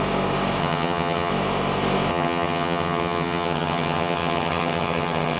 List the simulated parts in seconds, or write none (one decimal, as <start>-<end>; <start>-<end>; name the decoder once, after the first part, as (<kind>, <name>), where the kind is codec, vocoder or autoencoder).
0.6-1.3 (vocoder, HiFi-GAN); 2.1-5.4